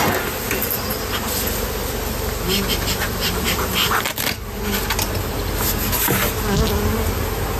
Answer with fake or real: real